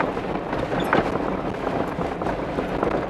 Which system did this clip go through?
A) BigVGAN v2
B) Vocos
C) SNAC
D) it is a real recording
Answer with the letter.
D